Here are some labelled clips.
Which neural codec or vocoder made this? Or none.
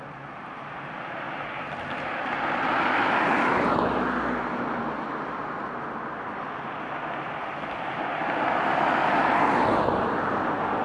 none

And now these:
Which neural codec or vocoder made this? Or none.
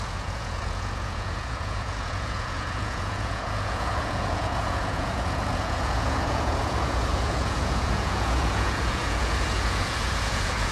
vocoder, Vocos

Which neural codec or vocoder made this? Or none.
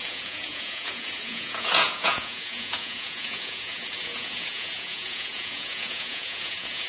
vocoder, Vocos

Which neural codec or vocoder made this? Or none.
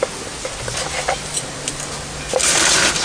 none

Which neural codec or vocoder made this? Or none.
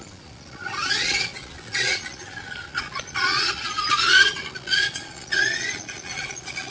vocoder, Vocos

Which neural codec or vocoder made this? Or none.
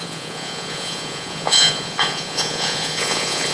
vocoder, Vocos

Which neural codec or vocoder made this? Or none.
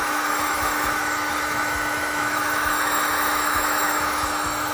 autoencoder, DAC-VAE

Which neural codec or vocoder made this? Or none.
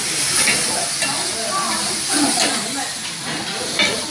none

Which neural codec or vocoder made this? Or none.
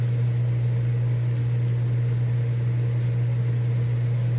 none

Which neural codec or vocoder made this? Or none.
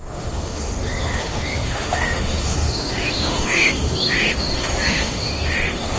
autoencoder, DAC-VAE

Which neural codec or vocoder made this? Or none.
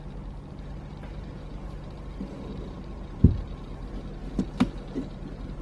none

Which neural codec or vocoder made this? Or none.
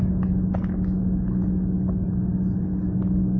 none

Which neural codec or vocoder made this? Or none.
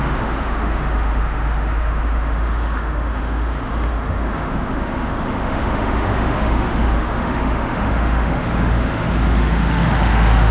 autoencoder, DAC-VAE